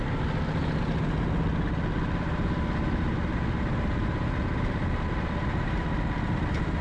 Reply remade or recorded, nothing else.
recorded